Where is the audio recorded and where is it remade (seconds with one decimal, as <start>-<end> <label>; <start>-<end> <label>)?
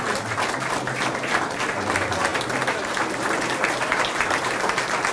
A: 0.0-5.1 recorded